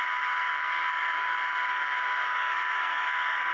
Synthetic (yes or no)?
yes